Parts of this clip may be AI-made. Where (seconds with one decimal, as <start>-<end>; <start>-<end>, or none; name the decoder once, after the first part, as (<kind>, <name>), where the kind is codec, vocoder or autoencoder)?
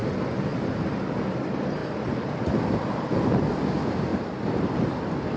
1.8-3.5 (vocoder, BigVGAN v2); 4.1-4.8